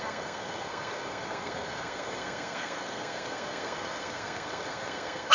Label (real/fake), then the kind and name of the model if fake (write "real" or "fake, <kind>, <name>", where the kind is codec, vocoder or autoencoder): fake, codec, SNAC